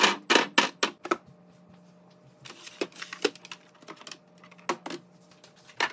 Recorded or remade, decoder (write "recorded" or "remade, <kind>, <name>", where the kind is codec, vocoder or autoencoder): recorded